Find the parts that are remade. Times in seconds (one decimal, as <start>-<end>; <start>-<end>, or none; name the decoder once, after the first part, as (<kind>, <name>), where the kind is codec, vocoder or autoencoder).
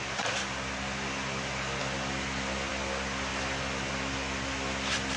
none